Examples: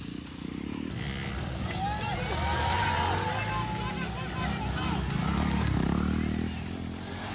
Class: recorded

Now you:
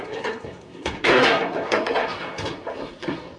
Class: remade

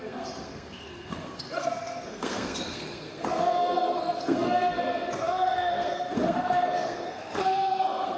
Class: remade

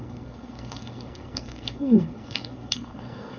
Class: remade